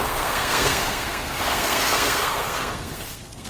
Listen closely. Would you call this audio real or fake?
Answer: fake